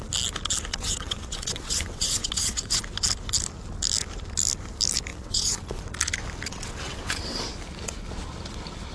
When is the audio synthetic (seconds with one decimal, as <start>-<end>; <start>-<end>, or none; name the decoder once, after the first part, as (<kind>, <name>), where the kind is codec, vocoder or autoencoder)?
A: 0.7-2.8 (vocoder, WaveNeXt); 5.1-5.8; 6.5-7.4